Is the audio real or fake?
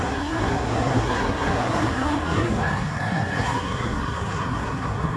fake